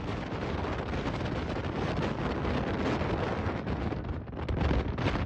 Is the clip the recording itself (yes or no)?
yes